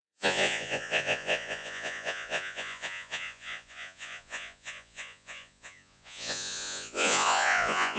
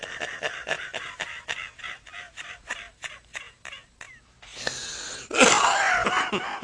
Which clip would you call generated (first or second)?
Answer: first